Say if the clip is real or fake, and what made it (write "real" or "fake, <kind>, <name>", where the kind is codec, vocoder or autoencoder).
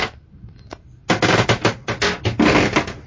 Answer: real